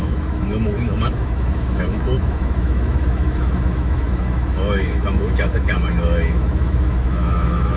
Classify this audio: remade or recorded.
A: remade